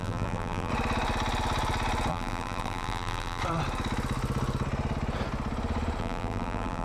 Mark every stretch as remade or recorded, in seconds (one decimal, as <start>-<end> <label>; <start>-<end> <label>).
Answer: 0.0-0.7 remade; 0.7-2.1 recorded; 2.1-3.4 remade; 3.4-6.0 recorded; 6.0-6.8 remade